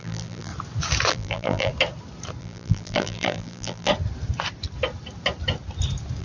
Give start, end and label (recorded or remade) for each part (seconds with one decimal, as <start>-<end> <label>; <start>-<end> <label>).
0.0-0.5 remade; 0.5-1.1 recorded; 1.1-1.7 remade; 1.7-2.4 recorded; 2.4-3.9 remade; 3.9-6.2 recorded